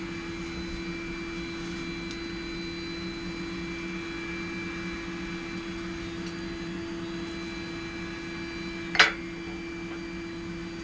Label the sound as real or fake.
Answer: real